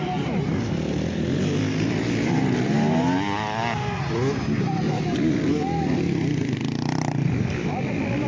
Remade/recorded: recorded